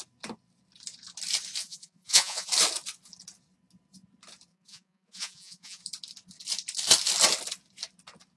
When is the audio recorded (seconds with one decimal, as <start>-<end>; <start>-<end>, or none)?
0.0-1.6; 2.5-4.5; 5.8-8.4

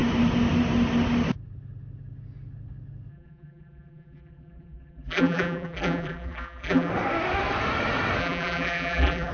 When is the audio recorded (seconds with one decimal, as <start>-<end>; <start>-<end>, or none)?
0.0-3.1; 6.9-8.2